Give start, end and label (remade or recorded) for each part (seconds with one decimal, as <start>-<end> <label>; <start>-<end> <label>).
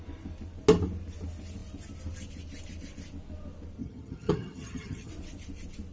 0.0-3.8 recorded; 3.8-5.1 remade; 5.1-5.9 recorded